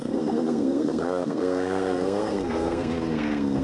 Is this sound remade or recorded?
remade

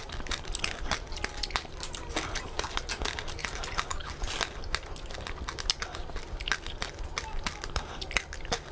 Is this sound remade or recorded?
recorded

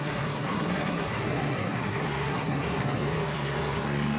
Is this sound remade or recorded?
remade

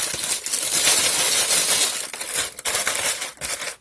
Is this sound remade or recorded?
recorded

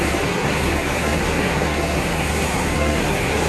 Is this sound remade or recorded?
remade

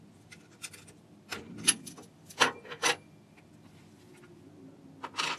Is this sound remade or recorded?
recorded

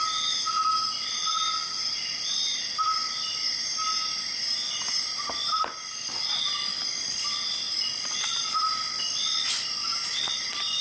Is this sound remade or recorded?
recorded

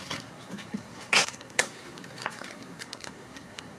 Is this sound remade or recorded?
remade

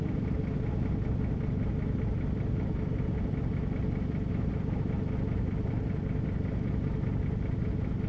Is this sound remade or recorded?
recorded